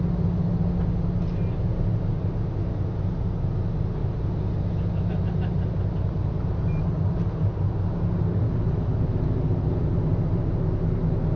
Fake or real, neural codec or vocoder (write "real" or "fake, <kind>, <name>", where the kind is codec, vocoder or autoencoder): real